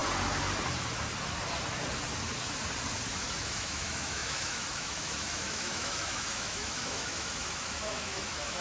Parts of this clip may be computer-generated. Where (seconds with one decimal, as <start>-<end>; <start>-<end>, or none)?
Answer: 3.4-8.6